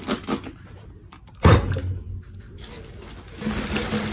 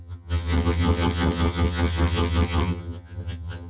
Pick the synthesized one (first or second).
second